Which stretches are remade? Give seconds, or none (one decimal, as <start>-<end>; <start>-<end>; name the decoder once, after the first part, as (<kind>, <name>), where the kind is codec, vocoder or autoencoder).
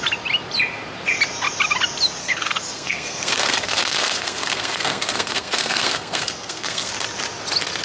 2.2-6.9 (codec, SNAC)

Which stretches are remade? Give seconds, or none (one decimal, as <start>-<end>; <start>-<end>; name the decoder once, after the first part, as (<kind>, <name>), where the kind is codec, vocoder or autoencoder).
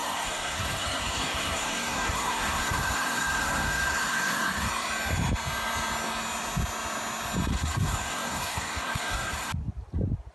0.0-4.7 (codec, SNAC); 7.5-9.5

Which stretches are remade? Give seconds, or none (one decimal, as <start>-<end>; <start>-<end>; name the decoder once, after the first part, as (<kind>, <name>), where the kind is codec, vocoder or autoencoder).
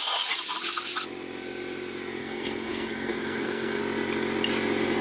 2.2-3.8 (codec, SNAC)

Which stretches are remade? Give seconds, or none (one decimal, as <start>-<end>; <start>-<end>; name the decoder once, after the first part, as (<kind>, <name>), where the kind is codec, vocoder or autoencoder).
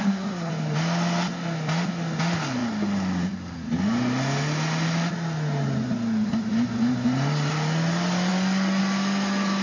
0.0-0.5 (codec, SNAC)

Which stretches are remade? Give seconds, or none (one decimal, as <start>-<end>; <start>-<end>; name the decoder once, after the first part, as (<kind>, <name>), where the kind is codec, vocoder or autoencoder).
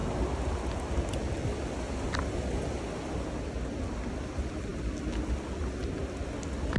none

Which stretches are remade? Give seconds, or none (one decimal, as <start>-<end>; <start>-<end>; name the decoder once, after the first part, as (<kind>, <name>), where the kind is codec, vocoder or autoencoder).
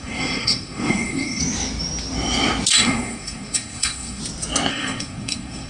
0.0-1.4 (codec, SNAC); 2.7-4.2; 4.7-5.7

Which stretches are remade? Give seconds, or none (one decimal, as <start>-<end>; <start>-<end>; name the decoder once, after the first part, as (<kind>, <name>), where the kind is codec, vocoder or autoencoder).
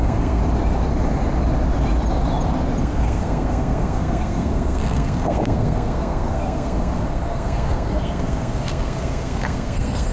0.0-0.4 (codec, SNAC); 2.8-10.1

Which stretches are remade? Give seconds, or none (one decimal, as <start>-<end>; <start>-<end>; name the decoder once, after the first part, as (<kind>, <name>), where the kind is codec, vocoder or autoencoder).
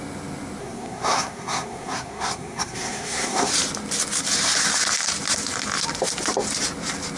0.6-3.5 (codec, SNAC)